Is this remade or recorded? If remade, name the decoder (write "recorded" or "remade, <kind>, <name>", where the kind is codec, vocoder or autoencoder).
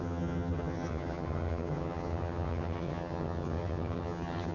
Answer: remade, vocoder, HiFi-GAN